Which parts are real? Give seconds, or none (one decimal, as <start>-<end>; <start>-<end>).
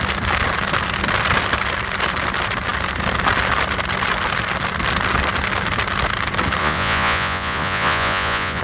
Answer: 0.0-6.6